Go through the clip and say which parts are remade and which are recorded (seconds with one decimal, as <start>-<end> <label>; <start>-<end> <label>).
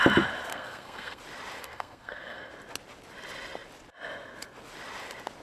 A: 0.0-0.5 recorded; 0.5-1.2 remade; 1.2-1.6 recorded; 1.6-2.5 remade; 2.5-5.4 recorded